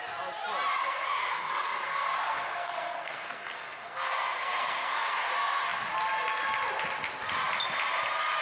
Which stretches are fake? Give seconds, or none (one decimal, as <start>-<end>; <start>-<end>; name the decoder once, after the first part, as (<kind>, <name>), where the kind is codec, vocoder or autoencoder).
0.8-5.3 (codec, SNAC)